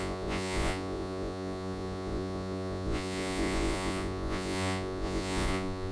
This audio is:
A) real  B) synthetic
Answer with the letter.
B